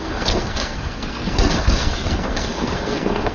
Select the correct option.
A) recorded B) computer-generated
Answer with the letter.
B